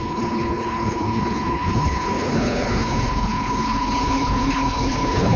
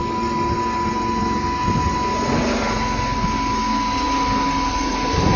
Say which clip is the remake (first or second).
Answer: first